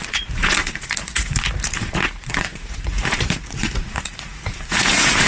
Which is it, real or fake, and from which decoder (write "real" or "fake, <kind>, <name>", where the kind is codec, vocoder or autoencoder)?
fake, vocoder, Vocos